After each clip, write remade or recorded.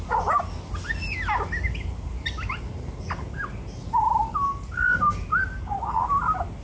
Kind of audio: recorded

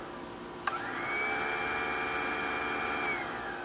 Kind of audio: recorded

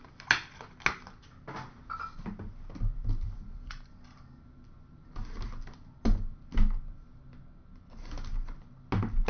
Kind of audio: recorded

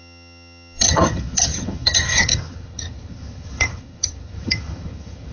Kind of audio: remade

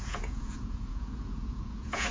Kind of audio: remade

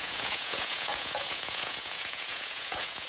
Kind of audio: remade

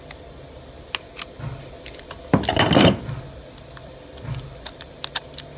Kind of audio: recorded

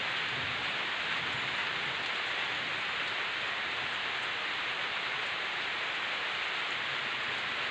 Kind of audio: recorded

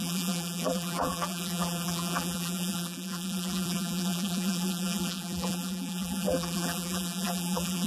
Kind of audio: remade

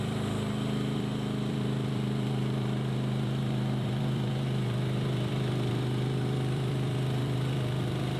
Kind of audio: remade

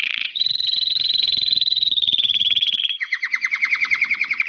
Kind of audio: remade